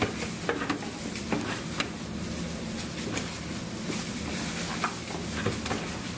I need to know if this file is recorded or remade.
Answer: recorded